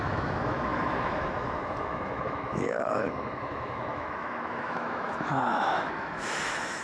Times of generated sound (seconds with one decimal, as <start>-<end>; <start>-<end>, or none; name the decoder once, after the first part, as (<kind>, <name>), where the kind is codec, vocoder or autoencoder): 0.0-6.8 (autoencoder, DAC-VAE)